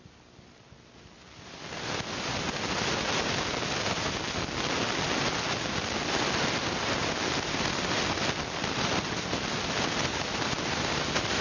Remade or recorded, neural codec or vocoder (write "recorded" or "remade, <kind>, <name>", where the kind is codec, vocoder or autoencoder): recorded